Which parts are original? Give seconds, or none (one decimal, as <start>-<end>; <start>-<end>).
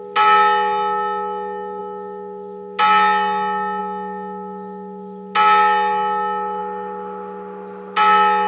0.0-8.5